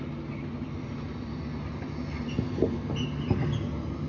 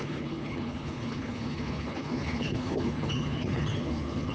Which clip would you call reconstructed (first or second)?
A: second